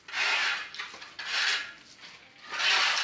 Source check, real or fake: real